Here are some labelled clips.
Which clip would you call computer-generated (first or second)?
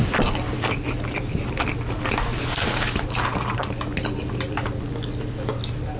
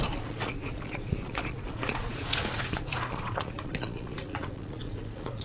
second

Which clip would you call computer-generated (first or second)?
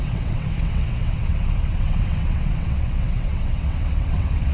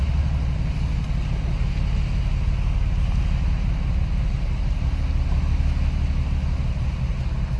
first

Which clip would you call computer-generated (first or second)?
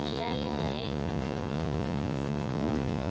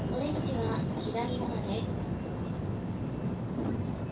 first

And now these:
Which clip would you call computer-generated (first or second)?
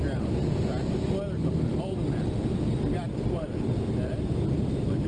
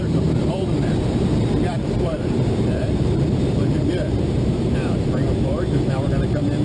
second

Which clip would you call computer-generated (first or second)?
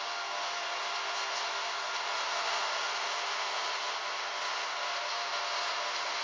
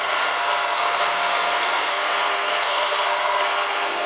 second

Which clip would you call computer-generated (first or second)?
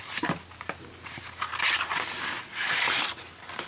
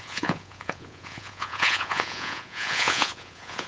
second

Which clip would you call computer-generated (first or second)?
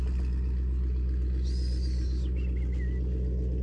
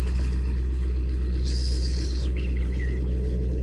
second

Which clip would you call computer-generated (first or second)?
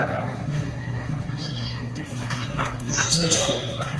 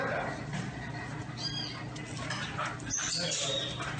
first